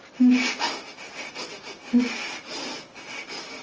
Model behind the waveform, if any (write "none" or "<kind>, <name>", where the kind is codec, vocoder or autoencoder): none